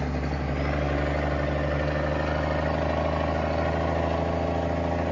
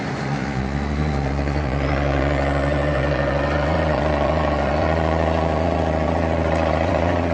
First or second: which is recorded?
first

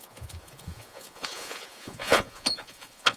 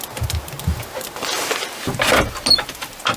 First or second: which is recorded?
second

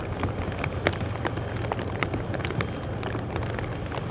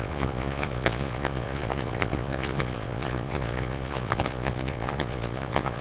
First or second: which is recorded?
first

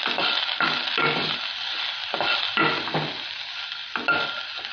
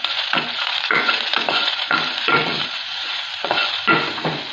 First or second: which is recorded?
first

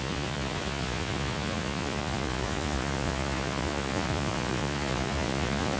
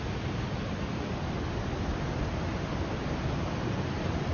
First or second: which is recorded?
second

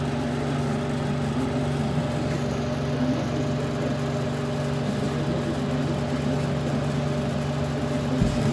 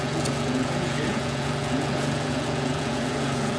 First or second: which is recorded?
first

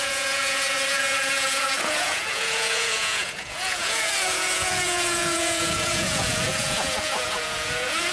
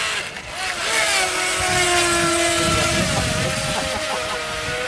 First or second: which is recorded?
second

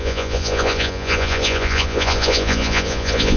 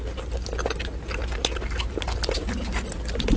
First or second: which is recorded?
second